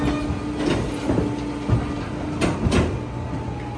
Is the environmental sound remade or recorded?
recorded